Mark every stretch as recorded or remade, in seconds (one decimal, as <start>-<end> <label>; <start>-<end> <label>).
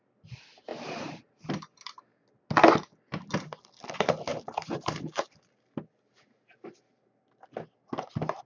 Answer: 0.0-0.7 recorded; 0.7-1.5 remade; 1.5-4.3 recorded; 4.3-5.3 remade; 5.3-8.5 recorded